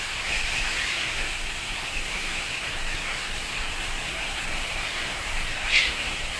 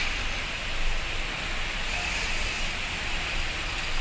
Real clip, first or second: second